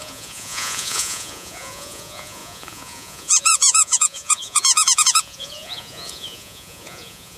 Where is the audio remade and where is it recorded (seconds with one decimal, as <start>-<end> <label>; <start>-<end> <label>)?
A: 0.0-7.4 remade